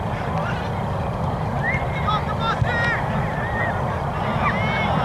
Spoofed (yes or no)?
no